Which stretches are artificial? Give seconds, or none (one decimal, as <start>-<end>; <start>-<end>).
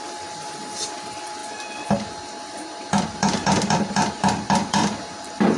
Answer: 0.0-1.4; 2.8-5.6